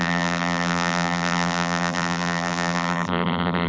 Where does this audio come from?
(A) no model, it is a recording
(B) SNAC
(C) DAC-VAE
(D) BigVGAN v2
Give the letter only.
D